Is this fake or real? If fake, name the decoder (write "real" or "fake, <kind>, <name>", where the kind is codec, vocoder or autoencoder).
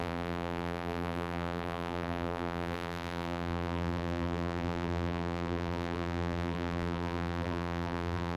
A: fake, vocoder, BigVGAN v2